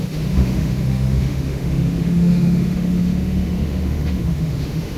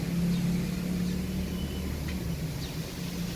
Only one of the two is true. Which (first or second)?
second